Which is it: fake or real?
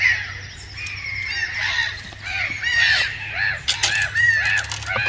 real